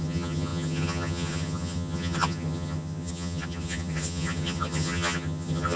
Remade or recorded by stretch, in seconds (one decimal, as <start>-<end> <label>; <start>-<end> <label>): 0.0-5.8 remade